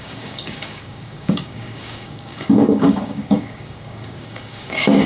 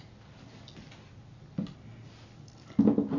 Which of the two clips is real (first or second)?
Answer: second